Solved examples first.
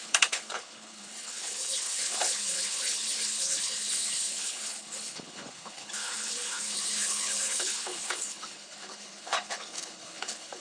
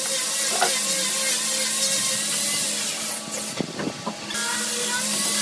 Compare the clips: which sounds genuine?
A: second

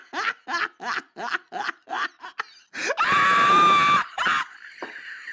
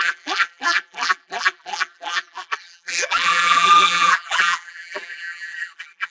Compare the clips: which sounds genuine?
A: first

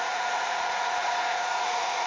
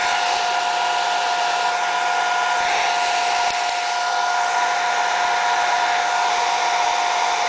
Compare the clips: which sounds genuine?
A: second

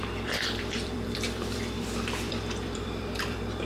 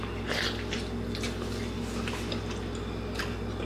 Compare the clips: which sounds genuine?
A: second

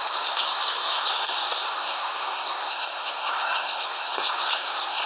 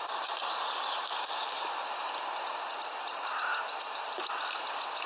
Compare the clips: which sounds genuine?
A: second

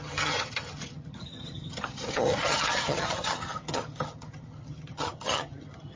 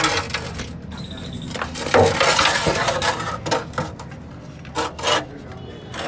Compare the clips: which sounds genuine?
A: second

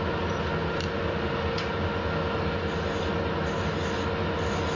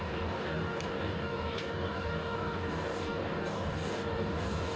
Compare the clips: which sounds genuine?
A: first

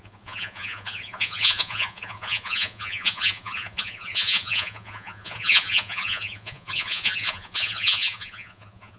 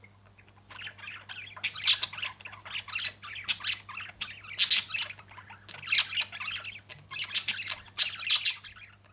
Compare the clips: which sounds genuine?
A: second